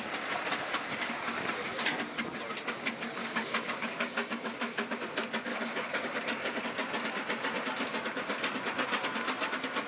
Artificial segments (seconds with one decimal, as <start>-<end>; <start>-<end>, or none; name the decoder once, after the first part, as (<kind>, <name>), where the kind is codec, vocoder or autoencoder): 3.2-5.0 (codec, DAC); 5.5-6.6